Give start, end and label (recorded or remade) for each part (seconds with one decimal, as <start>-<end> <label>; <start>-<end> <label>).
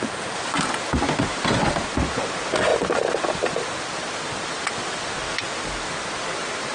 0.0-2.7 recorded; 2.7-5.1 remade; 5.1-6.7 recorded